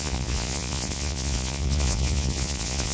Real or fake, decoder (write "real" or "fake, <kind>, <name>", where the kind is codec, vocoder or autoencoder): fake, vocoder, Vocos